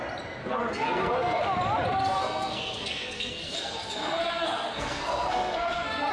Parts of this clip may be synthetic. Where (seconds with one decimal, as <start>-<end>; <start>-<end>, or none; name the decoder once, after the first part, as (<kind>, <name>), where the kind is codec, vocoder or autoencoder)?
0.4-1.4 (codec, SNAC); 2.1-6.1